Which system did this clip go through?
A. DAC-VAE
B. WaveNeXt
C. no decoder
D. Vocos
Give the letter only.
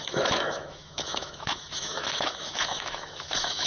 A